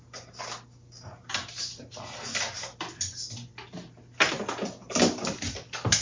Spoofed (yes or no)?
no